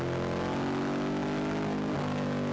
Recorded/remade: recorded